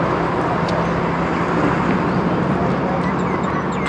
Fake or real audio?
real